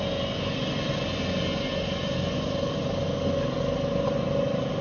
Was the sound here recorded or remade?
recorded